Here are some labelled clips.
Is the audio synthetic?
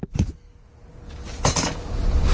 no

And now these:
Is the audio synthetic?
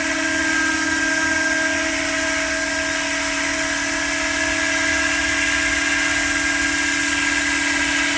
no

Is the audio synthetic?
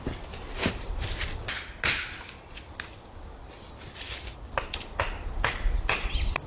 no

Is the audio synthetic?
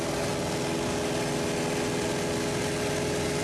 no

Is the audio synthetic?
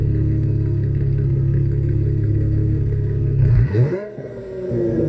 yes